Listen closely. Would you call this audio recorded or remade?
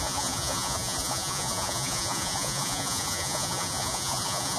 remade